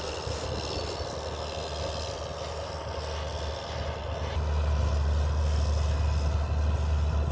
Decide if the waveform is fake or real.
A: real